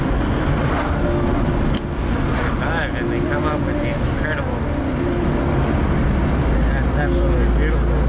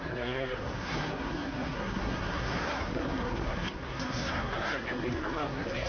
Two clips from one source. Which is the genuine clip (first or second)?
first